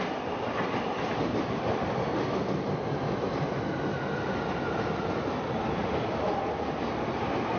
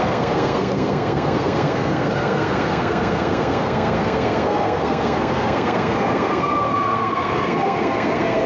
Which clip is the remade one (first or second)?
second